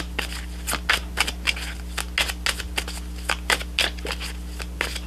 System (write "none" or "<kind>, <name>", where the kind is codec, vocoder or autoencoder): none